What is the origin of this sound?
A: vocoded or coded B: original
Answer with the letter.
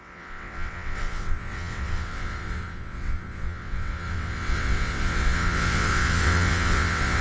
A